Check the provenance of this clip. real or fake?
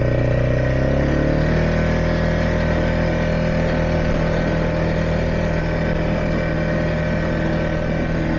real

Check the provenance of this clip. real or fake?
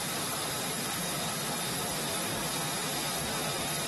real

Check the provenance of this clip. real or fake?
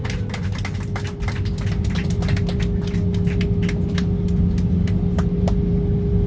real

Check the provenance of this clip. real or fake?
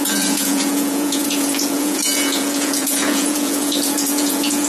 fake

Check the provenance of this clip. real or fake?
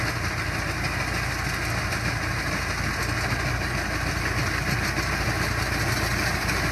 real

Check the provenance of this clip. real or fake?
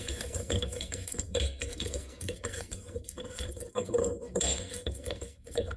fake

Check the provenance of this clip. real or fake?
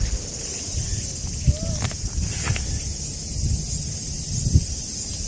real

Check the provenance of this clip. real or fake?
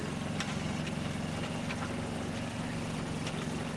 real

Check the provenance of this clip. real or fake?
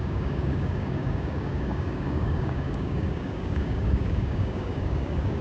fake